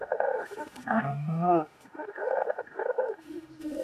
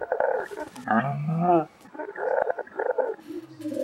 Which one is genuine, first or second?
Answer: second